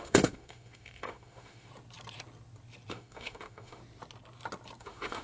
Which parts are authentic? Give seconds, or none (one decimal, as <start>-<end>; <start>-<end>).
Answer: 1.7-2.9; 3.8-4.8